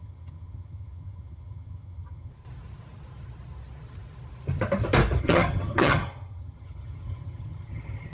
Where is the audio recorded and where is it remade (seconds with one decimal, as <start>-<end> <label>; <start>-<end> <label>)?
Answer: 0.0-2.3 remade; 2.3-5.2 recorded; 5.2-8.1 remade